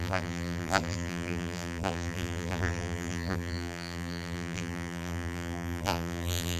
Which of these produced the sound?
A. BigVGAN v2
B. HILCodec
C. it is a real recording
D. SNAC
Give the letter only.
A